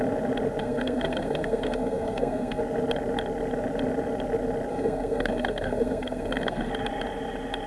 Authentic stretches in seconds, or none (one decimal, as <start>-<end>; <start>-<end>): 0.0-0.6; 2.6-4.7; 6.7-7.7